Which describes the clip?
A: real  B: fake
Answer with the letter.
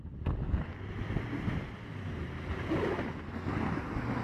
A